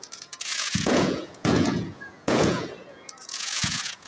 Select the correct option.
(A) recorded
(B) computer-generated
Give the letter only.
B